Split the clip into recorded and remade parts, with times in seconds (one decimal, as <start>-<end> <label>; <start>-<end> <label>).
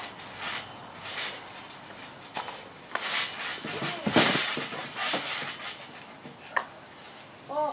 0.0-7.7 recorded